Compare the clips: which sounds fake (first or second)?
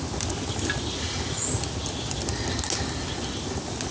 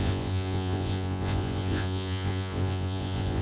second